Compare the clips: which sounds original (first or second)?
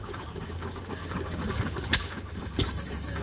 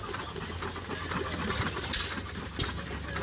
second